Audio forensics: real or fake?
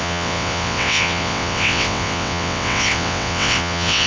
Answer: fake